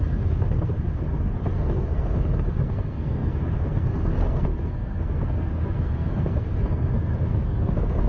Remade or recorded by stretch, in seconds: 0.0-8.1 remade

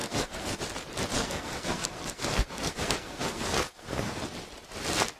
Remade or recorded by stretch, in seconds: 0.0-0.6 remade; 0.6-1.1 recorded; 1.1-4.2 remade; 4.2-5.2 recorded